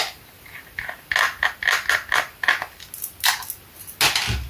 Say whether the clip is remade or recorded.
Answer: recorded